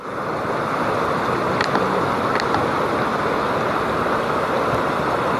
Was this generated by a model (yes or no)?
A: no